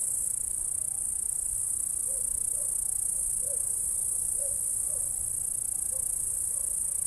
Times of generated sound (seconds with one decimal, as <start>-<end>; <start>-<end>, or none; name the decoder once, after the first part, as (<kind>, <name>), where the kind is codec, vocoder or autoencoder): 0.0-1.6 (vocoder, BigVGAN v2)

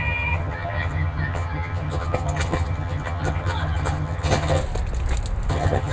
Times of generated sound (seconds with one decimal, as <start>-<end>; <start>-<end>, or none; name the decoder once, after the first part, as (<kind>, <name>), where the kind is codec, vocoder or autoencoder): 0.0-4.6 (vocoder, HiFi-GAN); 5.5-5.9

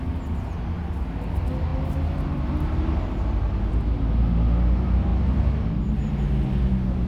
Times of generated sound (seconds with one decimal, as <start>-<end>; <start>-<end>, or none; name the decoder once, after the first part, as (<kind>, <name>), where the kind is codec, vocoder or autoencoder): none

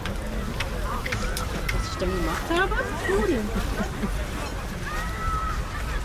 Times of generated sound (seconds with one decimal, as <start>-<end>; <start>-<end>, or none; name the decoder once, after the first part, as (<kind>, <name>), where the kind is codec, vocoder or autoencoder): none

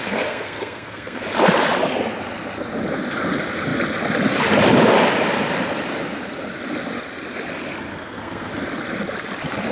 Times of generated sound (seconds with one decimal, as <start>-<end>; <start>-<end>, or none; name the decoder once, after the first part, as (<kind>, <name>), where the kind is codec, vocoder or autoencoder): 0.0-1.2 (codec, SNAC); 7.9-8.5

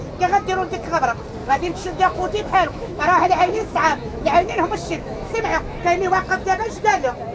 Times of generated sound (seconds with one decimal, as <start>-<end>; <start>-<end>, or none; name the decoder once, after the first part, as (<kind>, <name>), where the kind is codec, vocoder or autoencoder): 1.4-5.8 (autoencoder, DAC-VAE)